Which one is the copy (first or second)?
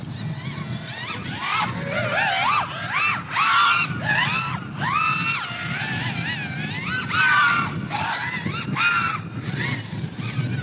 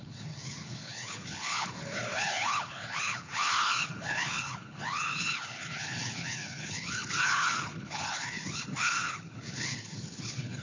second